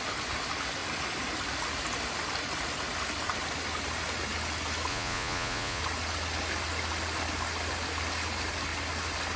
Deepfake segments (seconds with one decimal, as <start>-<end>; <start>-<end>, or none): 4.9-5.8